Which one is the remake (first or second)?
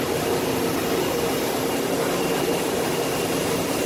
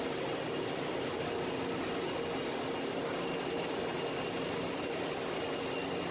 first